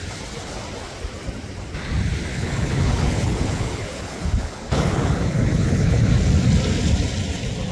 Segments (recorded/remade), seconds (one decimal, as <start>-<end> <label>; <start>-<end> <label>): 0.0-2.3 recorded; 2.3-6.1 remade; 6.1-7.7 recorded